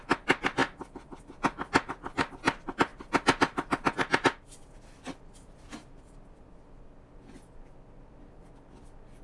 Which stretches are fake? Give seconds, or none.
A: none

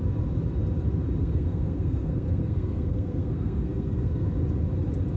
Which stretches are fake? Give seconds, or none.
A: 1.2-4.3 (codec, SNAC)

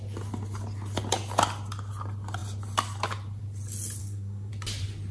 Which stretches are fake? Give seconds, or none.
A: 4.0-4.5 (codec, SNAC)